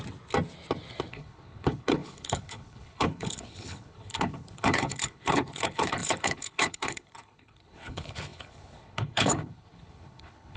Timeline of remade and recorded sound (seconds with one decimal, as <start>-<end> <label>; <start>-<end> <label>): 0.0-1.1 recorded; 1.1-10.6 remade